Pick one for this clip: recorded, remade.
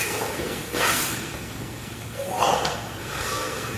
remade